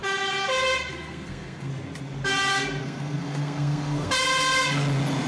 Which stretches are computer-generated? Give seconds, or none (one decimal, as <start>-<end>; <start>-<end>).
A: 0.9-1.7; 2.8-4.1